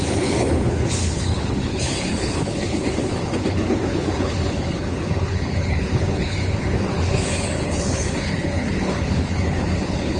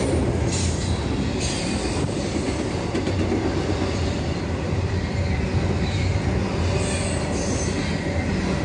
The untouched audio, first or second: second